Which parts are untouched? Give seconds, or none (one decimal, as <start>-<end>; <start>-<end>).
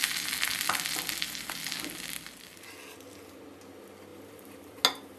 0.0-4.1; 4.8-5.2